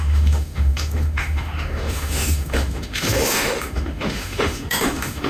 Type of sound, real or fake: fake